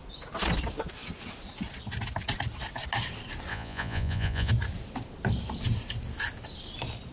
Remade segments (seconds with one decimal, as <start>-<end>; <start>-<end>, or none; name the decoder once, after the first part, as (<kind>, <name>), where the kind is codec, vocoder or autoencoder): 3.5-4.5 (vocoder, Vocos)